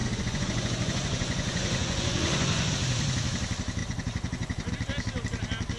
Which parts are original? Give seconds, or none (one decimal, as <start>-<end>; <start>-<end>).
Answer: 2.7-3.8; 4.7-5.8

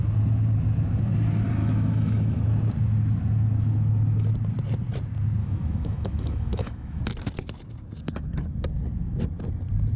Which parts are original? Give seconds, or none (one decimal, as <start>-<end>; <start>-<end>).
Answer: 0.0-1.6; 2.4-5.4; 7.0-10.0